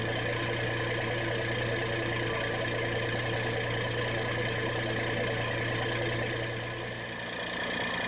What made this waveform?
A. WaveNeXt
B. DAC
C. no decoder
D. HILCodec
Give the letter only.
C